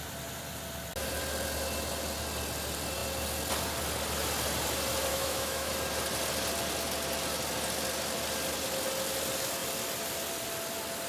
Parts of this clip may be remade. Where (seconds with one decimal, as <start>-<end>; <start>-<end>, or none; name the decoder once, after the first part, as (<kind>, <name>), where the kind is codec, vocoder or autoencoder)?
5.1-5.7 (autoencoder, DAC-VAE)